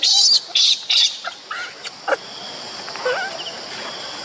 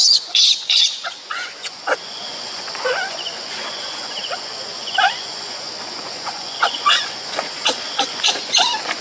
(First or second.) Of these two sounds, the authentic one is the first